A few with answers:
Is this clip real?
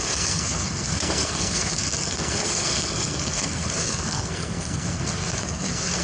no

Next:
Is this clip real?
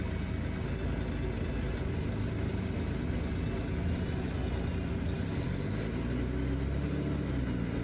yes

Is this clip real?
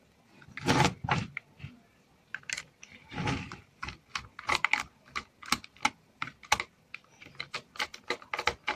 yes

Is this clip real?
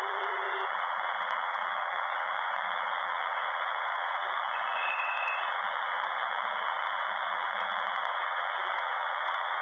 no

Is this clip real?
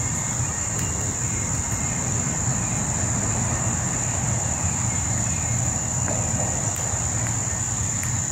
no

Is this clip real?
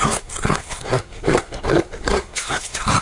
no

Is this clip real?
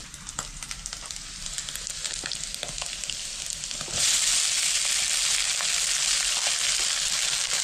yes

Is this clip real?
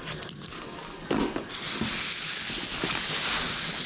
yes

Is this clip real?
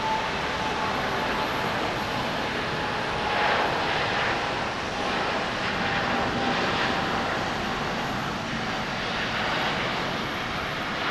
yes